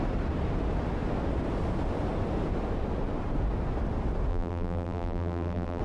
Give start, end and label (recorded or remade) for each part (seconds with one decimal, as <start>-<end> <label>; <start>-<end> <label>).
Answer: 0.0-4.3 recorded; 4.3-5.8 remade